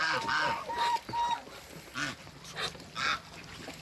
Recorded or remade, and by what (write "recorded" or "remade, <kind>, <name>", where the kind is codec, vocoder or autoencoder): recorded